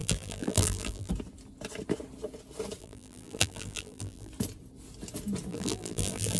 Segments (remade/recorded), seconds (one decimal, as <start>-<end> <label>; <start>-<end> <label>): 0.0-1.1 remade; 1.1-2.8 recorded; 2.8-4.3 remade; 4.3-5.5 recorded; 5.5-6.4 remade